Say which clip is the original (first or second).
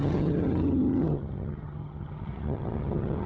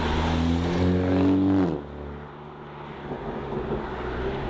second